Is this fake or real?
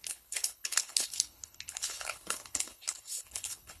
fake